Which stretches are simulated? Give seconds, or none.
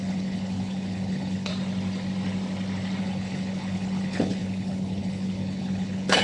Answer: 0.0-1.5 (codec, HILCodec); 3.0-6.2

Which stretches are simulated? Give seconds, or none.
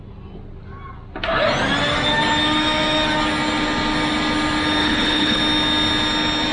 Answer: 4.8-5.4 (codec, HILCodec)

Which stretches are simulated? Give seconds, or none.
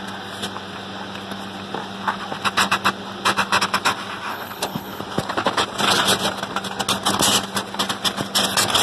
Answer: 4.3-5.0 (codec, HILCodec)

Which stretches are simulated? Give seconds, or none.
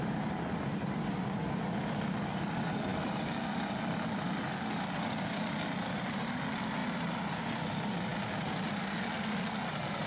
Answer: none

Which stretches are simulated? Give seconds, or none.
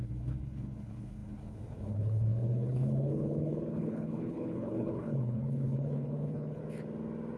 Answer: 0.0-6.6 (codec, HILCodec)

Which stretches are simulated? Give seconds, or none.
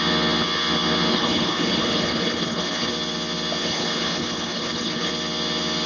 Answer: 1.1-2.9 (codec, HILCodec); 3.6-5.1